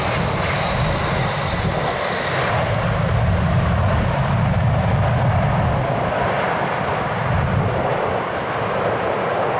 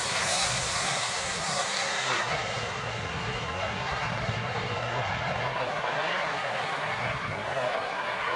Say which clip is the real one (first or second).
first